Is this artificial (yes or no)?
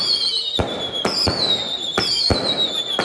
no